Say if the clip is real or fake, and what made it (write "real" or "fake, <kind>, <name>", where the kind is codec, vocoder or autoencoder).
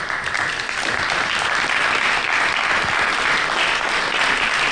real